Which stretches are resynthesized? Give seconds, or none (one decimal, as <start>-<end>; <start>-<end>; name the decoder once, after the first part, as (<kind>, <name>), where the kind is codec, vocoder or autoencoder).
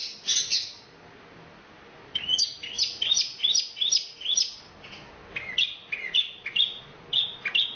none